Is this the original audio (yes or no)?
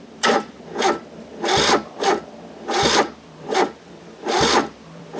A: no